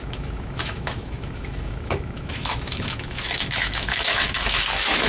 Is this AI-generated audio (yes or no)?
yes